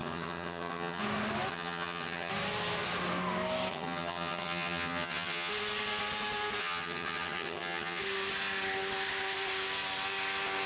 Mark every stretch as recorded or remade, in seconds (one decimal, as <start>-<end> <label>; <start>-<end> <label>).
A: 0.0-1.0 remade; 1.0-1.5 recorded; 1.5-2.3 remade; 2.3-3.7 recorded; 3.7-5.5 remade; 5.5-6.6 recorded; 6.6-8.0 remade; 8.0-10.7 recorded